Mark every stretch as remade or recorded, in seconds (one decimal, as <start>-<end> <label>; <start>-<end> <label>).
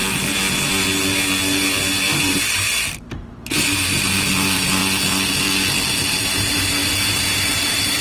0.0-2.1 recorded; 2.1-4.8 remade; 4.8-5.9 recorded; 5.9-8.0 remade